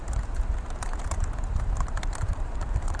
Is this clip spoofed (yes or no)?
yes